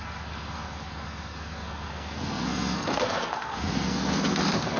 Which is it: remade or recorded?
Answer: remade